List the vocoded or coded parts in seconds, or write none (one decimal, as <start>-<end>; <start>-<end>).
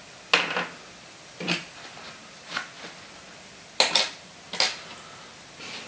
none